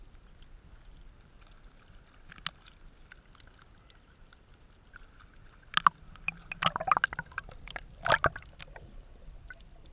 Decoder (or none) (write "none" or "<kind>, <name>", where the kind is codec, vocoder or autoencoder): none